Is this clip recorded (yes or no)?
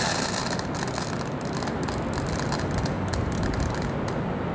yes